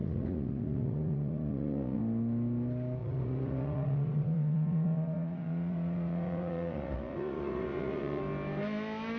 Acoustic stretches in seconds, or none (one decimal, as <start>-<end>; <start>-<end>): 2.0-3.0; 8.2-9.2